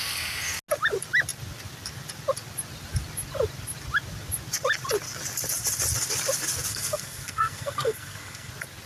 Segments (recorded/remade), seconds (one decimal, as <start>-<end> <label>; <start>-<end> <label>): 0.0-6.7 recorded; 6.7-8.5 remade; 8.5-8.9 recorded